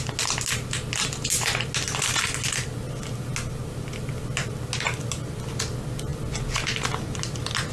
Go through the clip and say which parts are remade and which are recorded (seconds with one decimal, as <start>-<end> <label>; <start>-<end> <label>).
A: 0.0-7.7 recorded